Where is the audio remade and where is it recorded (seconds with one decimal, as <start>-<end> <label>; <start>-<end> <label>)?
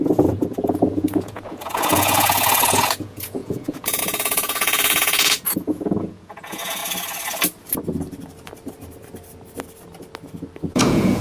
0.0-6.8 remade; 6.8-10.7 recorded; 10.7-11.2 remade